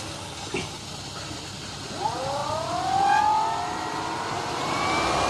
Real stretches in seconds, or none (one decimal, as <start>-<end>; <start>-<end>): 0.0-5.3